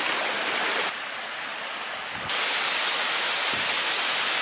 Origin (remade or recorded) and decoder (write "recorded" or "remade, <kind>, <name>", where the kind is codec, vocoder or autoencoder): recorded